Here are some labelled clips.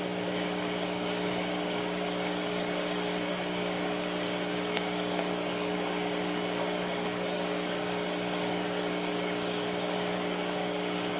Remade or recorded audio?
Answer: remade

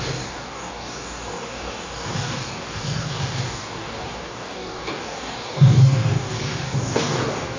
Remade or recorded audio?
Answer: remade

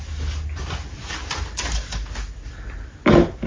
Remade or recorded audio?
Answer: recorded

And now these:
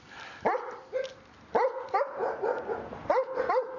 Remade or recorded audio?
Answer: recorded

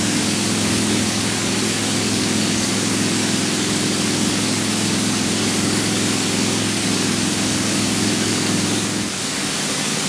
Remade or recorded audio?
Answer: remade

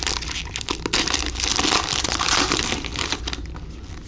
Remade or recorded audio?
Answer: recorded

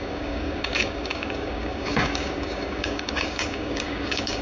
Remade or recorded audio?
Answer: remade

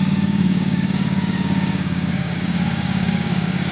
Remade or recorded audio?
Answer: remade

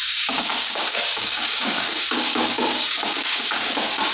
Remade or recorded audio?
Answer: remade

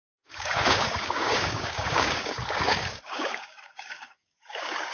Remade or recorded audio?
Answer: remade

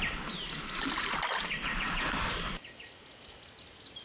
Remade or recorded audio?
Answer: recorded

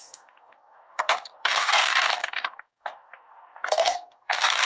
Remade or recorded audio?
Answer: remade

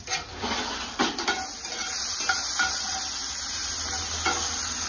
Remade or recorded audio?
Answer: recorded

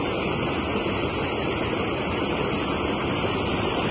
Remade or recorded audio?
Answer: recorded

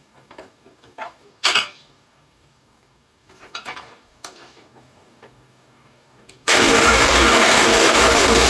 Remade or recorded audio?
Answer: remade